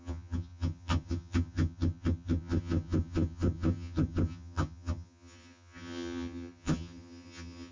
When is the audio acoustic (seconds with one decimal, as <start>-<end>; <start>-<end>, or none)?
none